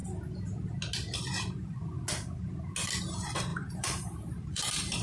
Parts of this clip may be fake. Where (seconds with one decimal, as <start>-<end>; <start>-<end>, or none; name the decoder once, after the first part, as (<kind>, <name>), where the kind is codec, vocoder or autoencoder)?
3.0-5.0 (vocoder, BigVGAN v2)